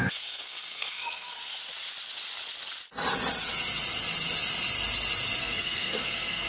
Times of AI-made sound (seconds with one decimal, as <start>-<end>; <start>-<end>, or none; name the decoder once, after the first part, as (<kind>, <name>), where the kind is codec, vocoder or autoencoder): 0.0-1.6 (codec, SNAC); 5.4-6.5

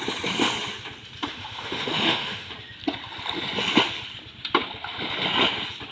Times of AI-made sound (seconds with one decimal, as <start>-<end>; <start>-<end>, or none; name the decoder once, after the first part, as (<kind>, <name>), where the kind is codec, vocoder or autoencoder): 1.3-2.5 (autoencoder, DAC-VAE)

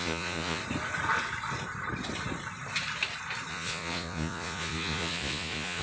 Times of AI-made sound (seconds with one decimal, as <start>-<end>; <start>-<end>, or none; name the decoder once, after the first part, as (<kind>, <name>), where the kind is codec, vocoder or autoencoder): 0.0-0.6 (vocoder, Vocos); 3.5-5.8

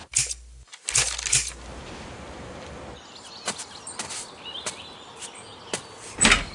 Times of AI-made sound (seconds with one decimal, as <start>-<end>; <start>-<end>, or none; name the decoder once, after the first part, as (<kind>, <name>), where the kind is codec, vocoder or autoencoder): none

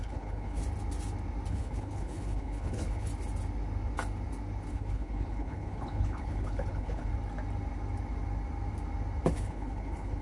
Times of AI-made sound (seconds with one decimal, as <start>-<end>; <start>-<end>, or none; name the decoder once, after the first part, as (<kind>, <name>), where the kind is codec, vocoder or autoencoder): 0.0-0.6 (codec, HILCodec); 1.5-3.1; 4.7-7.1; 9.3-10.2

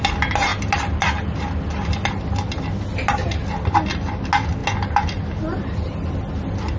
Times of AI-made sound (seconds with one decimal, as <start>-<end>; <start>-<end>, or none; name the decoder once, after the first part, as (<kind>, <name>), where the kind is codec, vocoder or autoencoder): none

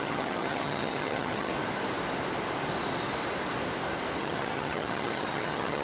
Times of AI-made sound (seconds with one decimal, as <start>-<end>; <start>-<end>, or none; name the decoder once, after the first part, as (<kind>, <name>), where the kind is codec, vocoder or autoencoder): 0.0-1.5 (vocoder, HiFi-GAN); 4.2-5.8

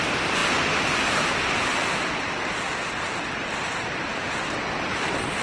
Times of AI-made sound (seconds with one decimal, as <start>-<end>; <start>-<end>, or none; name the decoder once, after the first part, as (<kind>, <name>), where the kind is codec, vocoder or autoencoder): none